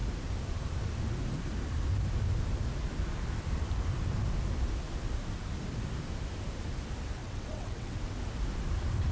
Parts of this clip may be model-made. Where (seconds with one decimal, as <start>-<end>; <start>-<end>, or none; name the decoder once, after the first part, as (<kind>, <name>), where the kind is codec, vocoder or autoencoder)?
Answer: 7.2-8.0 (vocoder, WaveNeXt)